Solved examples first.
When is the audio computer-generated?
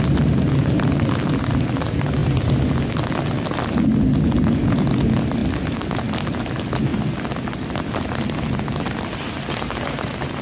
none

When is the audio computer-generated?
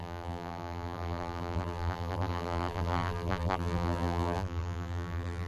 0.0-5.5 (vocoder, BigVGAN v2)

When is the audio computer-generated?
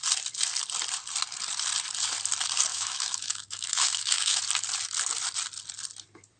2.7-4.4 (autoencoder, DAC-VAE)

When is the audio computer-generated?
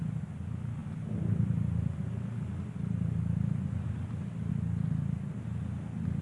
none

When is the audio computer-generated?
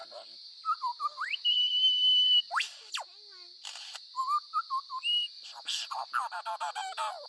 none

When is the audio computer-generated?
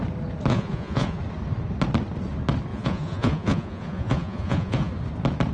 0.5-1.2 (vocoder, Vocos); 2.7-4.9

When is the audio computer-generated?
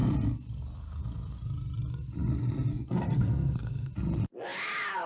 2.7-3.9 (codec, SNAC)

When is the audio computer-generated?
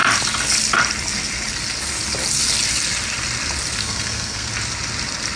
3.8-4.5 (codec, SNAC)